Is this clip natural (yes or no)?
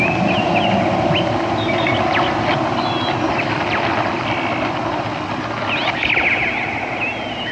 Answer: yes